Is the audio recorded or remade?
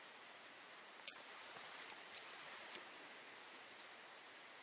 remade